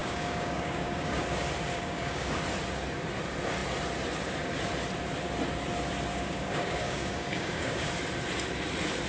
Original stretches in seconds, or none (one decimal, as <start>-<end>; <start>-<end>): 1.2-1.7; 2.4-6.1; 7.9-9.1